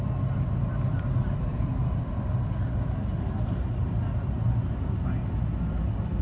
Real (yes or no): yes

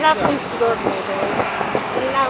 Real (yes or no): no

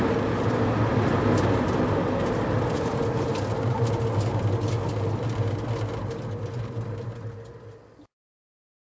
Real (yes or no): yes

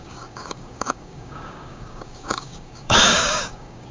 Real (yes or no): no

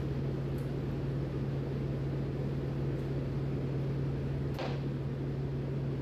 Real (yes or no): yes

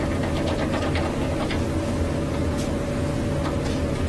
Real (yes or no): yes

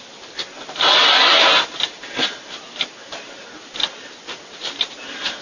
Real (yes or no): yes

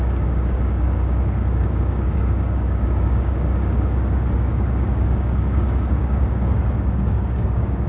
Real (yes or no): no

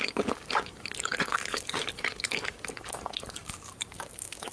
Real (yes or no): no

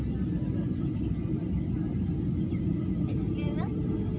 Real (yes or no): yes